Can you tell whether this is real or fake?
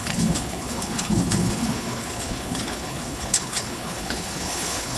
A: fake